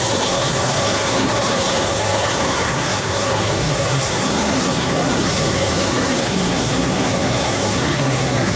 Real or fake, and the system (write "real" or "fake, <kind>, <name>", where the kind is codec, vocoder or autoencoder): fake, codec, SNAC